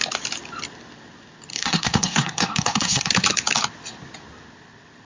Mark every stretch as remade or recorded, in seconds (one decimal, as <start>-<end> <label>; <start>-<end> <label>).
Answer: 0.0-1.5 recorded; 1.5-3.1 remade; 3.1-5.0 recorded